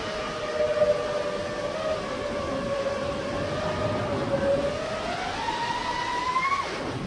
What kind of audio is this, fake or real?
real